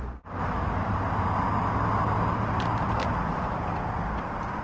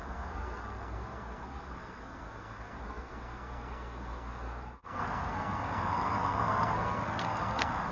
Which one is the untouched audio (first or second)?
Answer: first